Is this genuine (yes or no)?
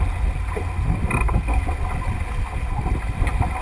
yes